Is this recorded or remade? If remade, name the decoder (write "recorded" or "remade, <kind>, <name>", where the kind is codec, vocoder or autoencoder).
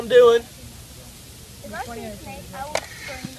recorded